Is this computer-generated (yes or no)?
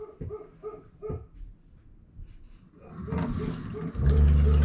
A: no